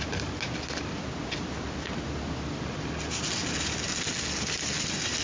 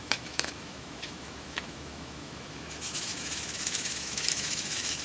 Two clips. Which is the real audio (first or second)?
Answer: first